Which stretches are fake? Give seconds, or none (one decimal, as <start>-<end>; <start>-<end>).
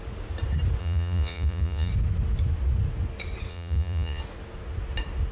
0.8-1.9; 3.5-4.2